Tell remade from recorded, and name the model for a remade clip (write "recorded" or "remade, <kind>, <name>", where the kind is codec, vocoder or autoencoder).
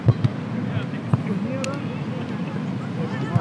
recorded